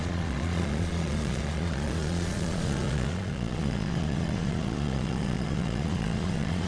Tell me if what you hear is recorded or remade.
remade